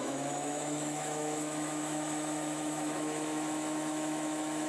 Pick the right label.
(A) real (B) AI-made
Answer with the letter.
B